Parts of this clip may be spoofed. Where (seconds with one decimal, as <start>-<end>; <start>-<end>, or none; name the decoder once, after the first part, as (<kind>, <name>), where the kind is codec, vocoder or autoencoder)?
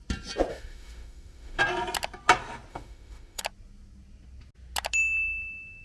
0.5-1.6 (autoencoder, DAC-VAE); 2.7-3.4